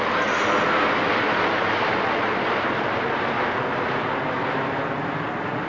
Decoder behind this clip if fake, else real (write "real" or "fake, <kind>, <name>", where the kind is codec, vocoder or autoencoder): real